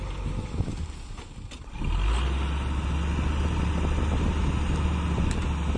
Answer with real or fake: real